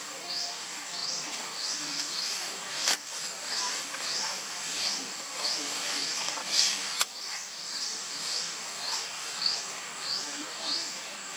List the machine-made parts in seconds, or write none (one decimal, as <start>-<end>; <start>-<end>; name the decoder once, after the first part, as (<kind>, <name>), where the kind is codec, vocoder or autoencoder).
0.0-11.4 (codec, DAC)